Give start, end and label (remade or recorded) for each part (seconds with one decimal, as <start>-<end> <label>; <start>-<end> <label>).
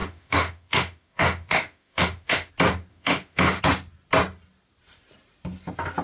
0.0-2.5 remade; 2.5-2.9 recorded; 2.9-3.6 remade; 3.6-6.0 recorded